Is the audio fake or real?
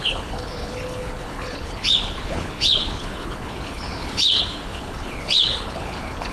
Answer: fake